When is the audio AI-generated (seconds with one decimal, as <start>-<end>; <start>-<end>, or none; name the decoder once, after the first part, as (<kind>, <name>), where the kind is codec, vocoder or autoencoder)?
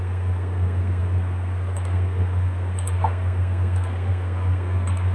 0.0-5.1 (codec, SNAC)